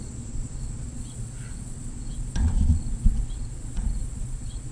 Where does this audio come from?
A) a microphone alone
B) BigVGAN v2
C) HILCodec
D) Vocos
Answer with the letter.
D